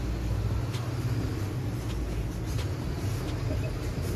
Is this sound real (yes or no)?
yes